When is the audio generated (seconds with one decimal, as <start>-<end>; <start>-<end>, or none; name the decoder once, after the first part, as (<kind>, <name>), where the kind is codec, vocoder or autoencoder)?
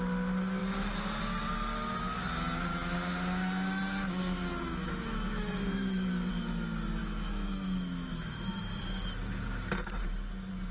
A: 2.7-6.3 (autoencoder, DAC-VAE); 7.0-8.8